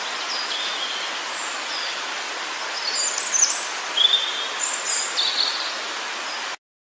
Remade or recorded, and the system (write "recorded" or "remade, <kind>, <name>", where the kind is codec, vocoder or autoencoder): recorded